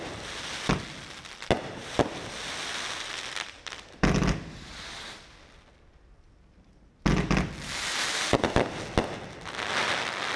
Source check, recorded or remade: recorded